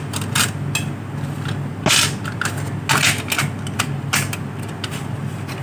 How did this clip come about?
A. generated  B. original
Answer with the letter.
B